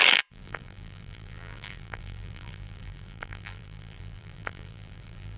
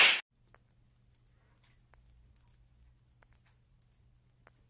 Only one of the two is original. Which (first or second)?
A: second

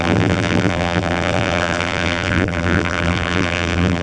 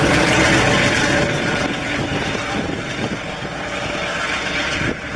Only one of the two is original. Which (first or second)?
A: second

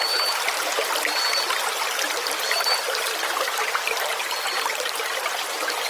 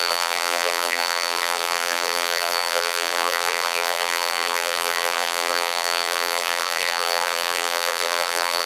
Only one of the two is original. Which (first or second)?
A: first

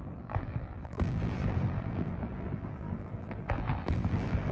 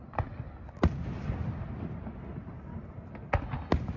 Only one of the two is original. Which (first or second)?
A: second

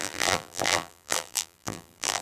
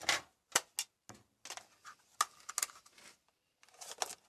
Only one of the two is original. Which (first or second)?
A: second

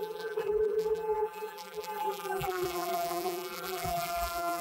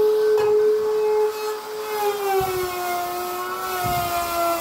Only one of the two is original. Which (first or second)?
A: second